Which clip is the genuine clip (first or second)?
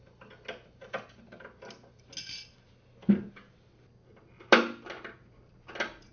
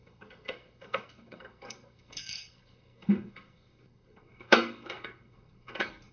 first